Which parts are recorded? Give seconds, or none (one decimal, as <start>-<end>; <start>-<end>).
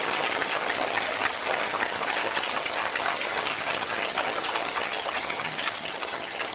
none